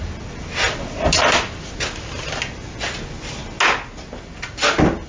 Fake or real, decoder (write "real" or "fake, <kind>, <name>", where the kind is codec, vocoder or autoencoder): real